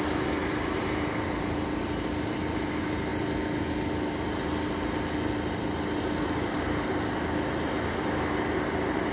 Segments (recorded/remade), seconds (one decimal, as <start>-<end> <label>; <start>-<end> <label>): 0.0-9.1 recorded